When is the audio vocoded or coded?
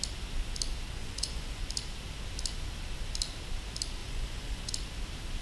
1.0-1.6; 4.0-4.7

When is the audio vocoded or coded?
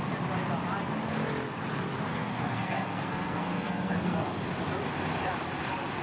2.1-4.3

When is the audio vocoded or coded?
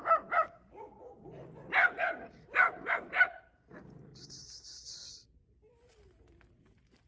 1.8-3.4